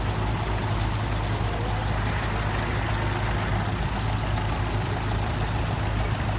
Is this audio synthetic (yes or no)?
no